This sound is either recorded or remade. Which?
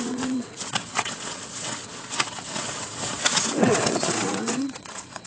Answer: remade